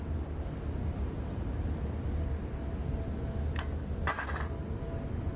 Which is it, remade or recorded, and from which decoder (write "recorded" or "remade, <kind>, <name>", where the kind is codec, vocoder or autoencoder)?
recorded